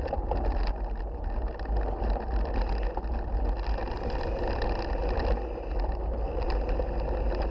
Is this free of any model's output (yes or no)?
yes